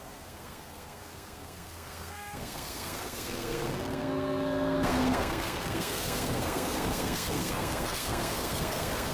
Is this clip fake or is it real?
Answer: fake